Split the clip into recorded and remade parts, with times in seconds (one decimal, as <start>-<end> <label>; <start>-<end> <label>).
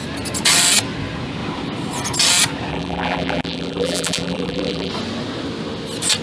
0.0-2.7 recorded; 2.7-4.9 remade; 4.9-6.2 recorded